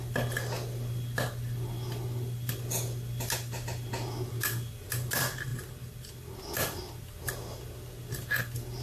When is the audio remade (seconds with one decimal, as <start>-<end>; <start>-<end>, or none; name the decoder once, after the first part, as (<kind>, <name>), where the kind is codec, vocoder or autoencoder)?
none